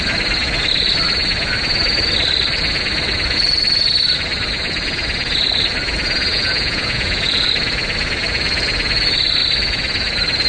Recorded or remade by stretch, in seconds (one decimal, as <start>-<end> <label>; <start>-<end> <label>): 0.0-6.3 recorded; 6.3-7.5 remade; 7.5-10.5 recorded

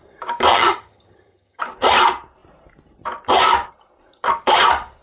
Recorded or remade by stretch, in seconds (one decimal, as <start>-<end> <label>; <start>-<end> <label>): 0.0-0.5 recorded; 0.5-1.6 remade; 1.6-5.0 recorded

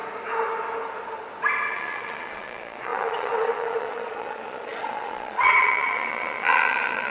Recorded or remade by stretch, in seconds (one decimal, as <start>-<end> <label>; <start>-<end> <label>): 0.0-1.7 recorded; 1.7-7.1 remade

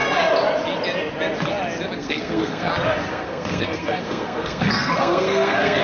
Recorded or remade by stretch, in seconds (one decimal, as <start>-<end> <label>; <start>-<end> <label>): 0.0-2.0 recorded; 2.0-2.7 remade; 2.7-3.1 recorded; 3.1-5.8 remade